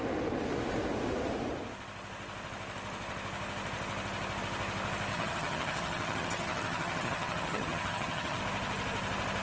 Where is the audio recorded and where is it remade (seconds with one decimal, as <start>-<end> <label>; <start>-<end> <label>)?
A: 0.0-5.1 recorded; 5.1-8.4 remade; 8.4-9.4 recorded